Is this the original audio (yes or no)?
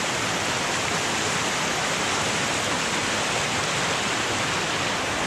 yes